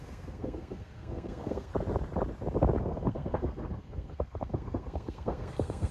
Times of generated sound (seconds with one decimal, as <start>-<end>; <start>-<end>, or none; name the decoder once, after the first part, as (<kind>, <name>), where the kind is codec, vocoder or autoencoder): 0.0-1.7 (codec, SNAC); 2.8-5.9